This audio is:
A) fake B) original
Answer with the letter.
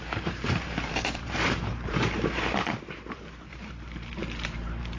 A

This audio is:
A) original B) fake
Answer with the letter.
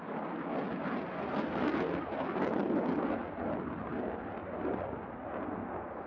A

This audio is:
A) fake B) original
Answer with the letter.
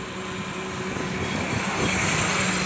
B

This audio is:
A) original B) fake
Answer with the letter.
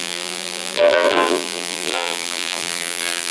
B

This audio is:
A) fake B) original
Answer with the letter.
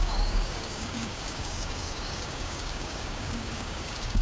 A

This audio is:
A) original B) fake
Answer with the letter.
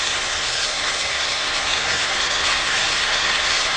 B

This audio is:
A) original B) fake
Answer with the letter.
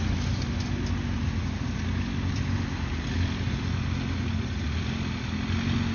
A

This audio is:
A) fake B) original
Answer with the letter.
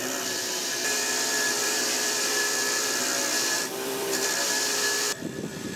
A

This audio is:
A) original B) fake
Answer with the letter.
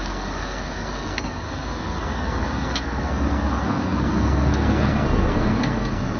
B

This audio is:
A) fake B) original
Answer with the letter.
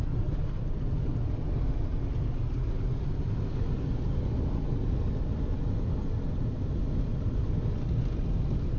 B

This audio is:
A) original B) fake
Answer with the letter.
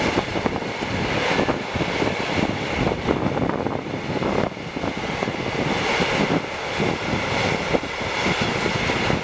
A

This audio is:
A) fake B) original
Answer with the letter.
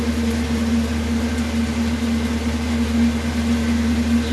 B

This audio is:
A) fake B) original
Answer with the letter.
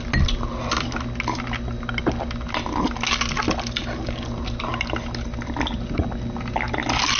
B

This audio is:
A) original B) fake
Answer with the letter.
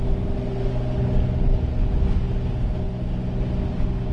A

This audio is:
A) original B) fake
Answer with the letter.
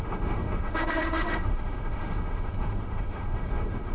B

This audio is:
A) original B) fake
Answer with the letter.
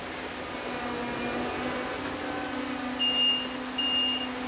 A